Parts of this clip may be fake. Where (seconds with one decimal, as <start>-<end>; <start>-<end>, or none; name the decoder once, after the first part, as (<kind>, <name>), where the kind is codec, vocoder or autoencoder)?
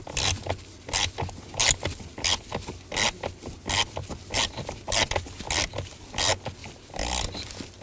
none